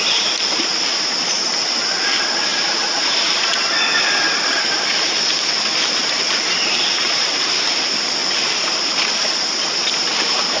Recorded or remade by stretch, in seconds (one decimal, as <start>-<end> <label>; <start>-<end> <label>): 0.0-10.6 recorded